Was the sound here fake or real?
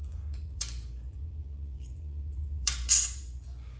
fake